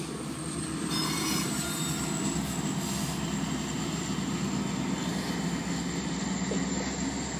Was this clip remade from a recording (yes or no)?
no